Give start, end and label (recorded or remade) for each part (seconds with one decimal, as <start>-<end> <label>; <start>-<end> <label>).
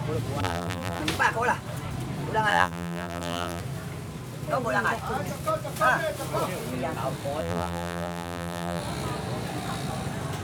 0.0-0.4 recorded; 0.4-1.0 remade; 1.0-2.5 recorded; 2.5-3.6 remade; 3.6-7.4 recorded; 7.4-8.8 remade; 8.8-10.4 recorded